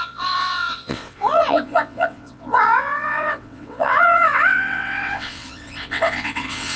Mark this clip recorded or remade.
remade